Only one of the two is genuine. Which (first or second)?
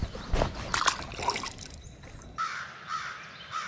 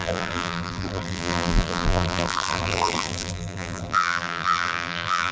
first